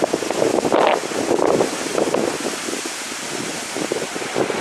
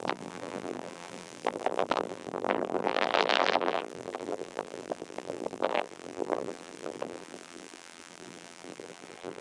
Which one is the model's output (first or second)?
second